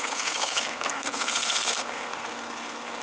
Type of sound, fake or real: fake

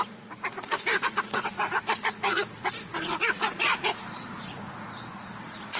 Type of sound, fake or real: fake